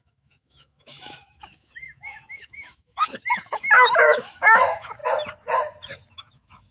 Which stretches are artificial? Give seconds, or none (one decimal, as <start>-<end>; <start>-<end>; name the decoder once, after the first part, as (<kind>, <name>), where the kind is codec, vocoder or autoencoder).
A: 0.0-5.0 (autoencoder, DAC-VAE); 6.1-6.7